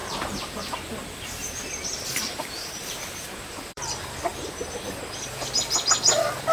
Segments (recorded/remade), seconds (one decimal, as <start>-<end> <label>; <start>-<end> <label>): 0.0-3.8 remade; 3.8-6.5 recorded